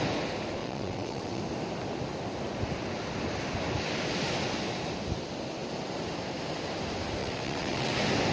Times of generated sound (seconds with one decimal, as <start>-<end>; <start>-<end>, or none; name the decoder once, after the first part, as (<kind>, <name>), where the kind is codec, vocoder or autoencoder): 0.6-1.4 (vocoder, WaveNeXt); 7.2-7.9

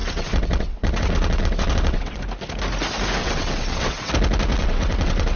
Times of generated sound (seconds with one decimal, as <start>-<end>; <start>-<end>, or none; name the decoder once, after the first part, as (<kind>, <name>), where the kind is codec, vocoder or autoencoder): 0.0-2.2 (vocoder, WaveNeXt); 3.2-4.1; 4.6-5.4